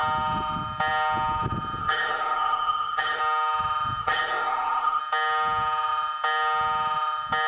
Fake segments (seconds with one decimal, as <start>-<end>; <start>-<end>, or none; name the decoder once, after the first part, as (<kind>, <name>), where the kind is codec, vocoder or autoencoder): 1.8-3.2 (codec, ZipCodec); 4.0-5.0